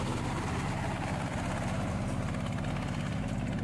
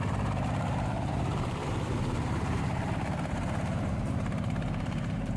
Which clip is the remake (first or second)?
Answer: second